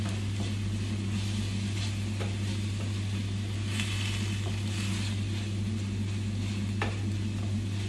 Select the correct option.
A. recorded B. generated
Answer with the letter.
A